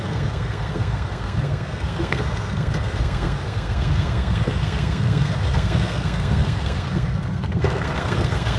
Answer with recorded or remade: remade